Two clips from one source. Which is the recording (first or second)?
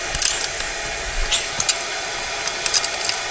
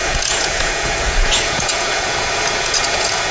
first